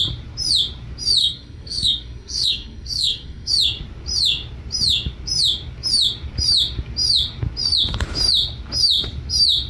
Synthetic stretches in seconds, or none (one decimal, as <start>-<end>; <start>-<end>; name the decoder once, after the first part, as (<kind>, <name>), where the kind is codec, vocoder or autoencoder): 1.2-3.5 (codec, SNAC)